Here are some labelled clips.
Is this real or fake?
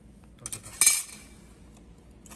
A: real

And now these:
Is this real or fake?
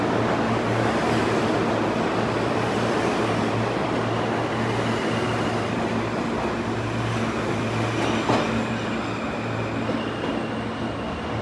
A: real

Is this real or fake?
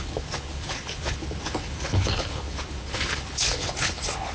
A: fake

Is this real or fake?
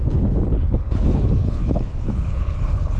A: fake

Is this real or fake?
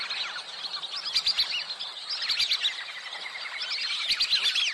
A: real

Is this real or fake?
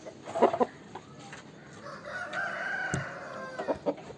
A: real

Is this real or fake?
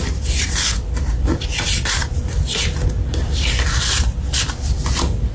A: real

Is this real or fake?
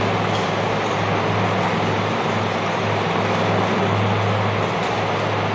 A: real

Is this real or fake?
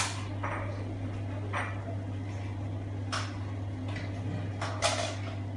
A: real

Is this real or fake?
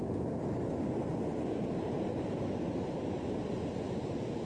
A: real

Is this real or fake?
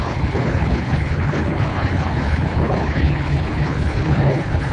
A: fake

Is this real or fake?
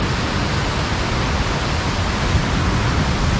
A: real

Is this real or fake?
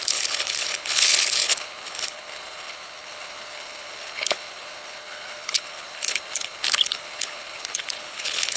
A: fake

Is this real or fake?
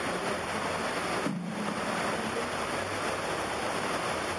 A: real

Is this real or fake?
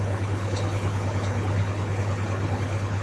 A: fake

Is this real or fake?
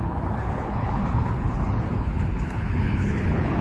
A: fake